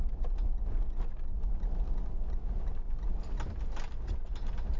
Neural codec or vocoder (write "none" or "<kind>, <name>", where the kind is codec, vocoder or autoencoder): none